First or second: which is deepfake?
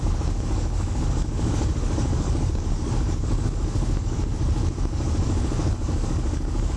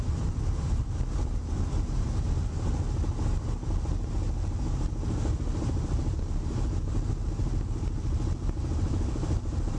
first